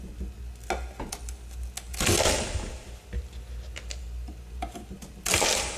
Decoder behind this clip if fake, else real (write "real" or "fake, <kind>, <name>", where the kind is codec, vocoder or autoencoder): real